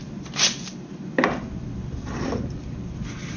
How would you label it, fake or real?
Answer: real